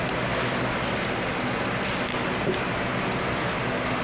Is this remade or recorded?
recorded